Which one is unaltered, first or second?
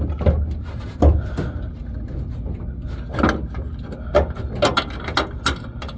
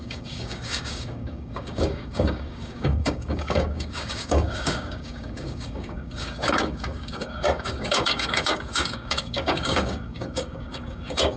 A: first